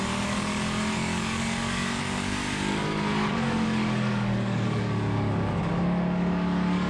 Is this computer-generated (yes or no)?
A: yes